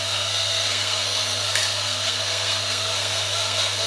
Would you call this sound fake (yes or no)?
yes